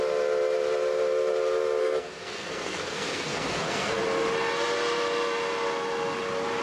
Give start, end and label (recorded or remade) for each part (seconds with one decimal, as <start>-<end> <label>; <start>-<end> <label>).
0.0-1.8 recorded; 1.8-4.0 remade; 4.0-6.6 recorded